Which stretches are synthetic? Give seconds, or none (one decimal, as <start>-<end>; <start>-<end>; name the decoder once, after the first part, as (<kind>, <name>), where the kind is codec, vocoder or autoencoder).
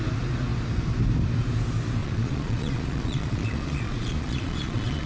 2.0-5.1 (vocoder, Vocos)